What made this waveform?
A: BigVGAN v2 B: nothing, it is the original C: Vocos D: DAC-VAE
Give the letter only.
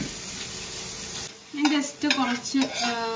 B